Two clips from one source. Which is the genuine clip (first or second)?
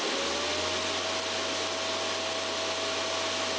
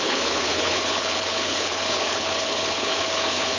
first